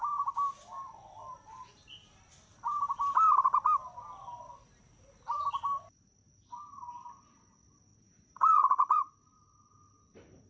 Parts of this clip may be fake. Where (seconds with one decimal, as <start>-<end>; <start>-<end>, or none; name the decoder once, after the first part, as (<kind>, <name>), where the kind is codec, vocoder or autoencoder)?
7.9-9.1 (vocoder, Vocos)